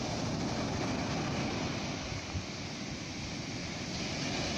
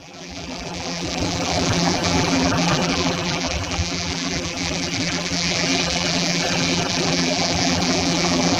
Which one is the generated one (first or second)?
second